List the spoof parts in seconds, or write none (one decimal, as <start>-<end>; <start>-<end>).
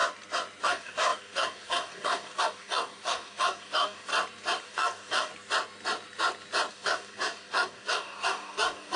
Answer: 0.6-4.1; 4.6-5.3; 6.7-9.0